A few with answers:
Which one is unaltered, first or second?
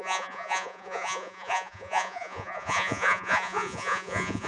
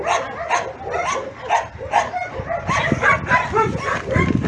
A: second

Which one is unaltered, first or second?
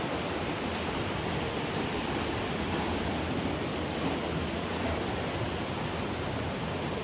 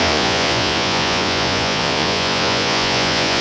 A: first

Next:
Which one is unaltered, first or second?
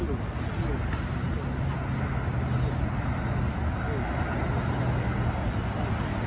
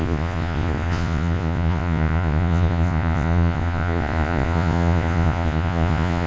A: first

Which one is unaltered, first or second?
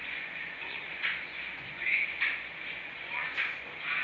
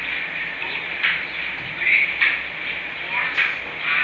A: second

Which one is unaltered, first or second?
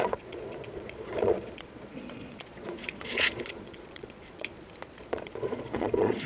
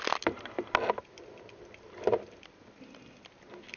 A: second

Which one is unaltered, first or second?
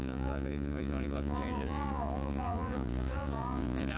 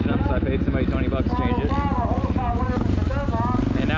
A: second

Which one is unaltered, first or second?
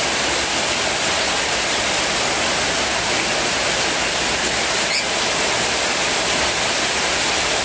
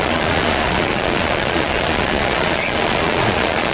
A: first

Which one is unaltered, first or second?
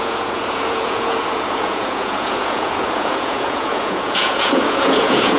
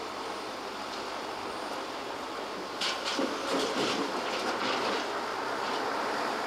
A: second